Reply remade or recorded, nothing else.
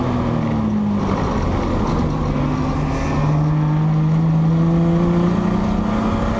recorded